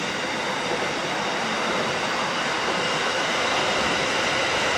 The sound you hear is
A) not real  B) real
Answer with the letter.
A